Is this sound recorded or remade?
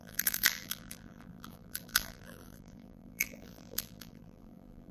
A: remade